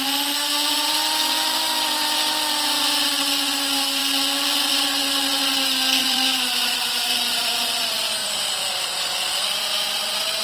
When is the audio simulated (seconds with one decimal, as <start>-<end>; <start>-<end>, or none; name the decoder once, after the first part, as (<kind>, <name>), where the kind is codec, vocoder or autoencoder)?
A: 6.0-7.5 (vocoder, BigVGAN v2); 8.2-10.4